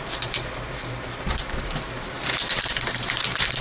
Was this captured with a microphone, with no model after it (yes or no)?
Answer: no